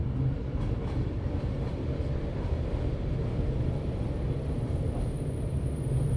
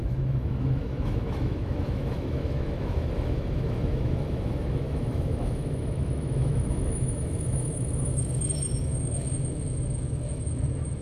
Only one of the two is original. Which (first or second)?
first